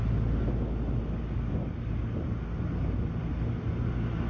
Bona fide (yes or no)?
yes